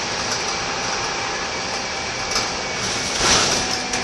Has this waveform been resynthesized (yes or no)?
no